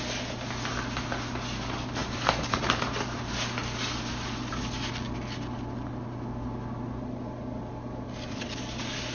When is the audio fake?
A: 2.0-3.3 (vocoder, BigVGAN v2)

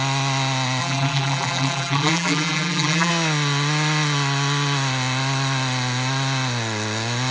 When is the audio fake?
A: 0.8-3.1 (vocoder, BigVGAN v2)

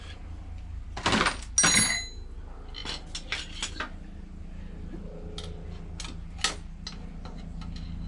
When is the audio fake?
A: none

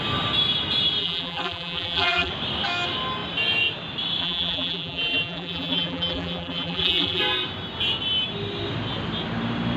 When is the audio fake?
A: 1.0-2.3 (vocoder, BigVGAN v2); 4.2-7.2

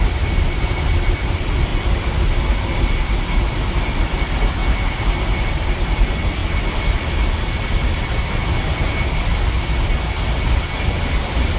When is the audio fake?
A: 0.0-1.7 (vocoder, BigVGAN v2); 3.1-4.6; 5.4-6.4

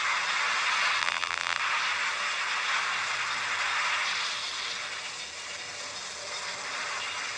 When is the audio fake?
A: 1.0-1.6 (vocoder, BigVGAN v2)

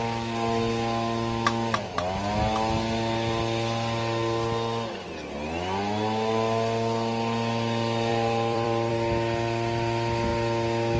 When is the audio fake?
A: 8.1-8.9 (vocoder, BigVGAN v2)

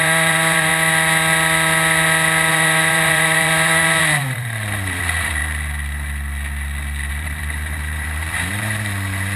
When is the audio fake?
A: 0.0-0.7 (vocoder, BigVGAN v2); 2.5-5.4; 7.1-9.4